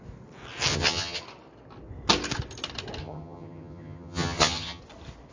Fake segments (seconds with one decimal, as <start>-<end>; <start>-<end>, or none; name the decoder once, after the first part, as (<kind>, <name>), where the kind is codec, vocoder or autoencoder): 0.7-1.2 (vocoder, HiFi-GAN); 3.0-4.8